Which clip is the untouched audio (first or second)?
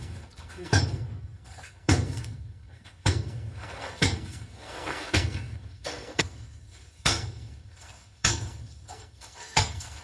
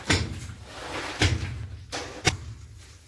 second